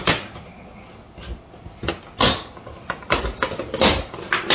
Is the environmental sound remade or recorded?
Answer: recorded